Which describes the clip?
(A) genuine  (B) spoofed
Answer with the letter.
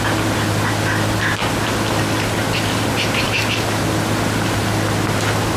A